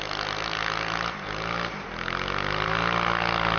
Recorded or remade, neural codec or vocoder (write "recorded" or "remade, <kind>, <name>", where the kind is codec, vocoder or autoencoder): recorded